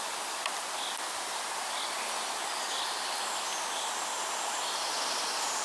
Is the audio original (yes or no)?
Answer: yes